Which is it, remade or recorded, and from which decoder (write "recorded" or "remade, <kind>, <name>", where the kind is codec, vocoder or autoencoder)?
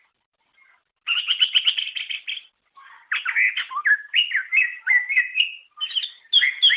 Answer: recorded